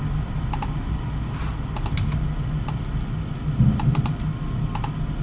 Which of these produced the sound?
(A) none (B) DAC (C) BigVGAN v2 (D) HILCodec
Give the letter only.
A